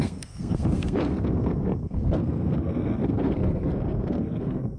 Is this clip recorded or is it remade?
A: remade